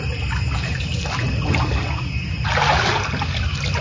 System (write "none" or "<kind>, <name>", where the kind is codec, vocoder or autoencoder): none